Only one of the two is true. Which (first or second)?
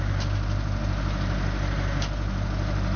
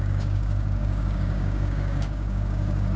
first